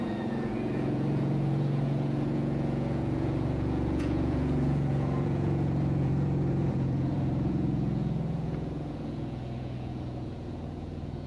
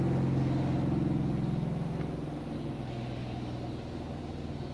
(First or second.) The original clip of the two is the second